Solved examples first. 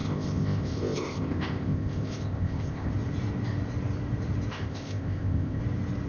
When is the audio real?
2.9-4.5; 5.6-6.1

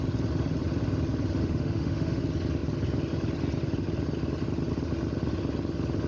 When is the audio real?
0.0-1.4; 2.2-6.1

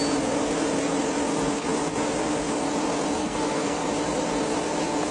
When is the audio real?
0.0-3.2; 3.9-5.1

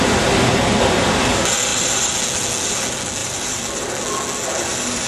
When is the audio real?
0.0-3.2; 3.9-5.1

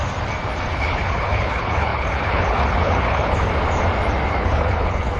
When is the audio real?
0.0-0.7; 3.5-4.3

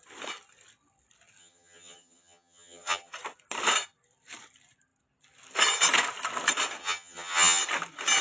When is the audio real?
0.0-1.4; 3.1-6.8; 7.6-8.2

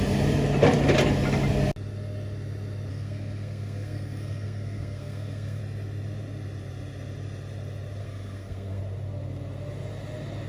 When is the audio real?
0.0-2.9; 5.6-8.0; 8.8-10.5